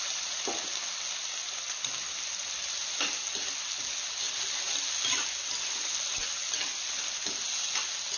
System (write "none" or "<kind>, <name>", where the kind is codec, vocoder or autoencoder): none